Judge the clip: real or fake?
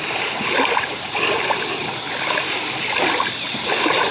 real